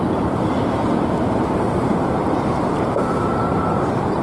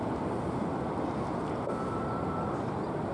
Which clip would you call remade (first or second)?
first